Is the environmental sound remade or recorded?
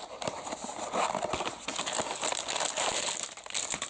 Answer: recorded